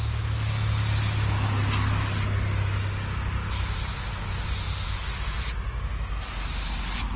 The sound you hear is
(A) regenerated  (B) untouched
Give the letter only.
B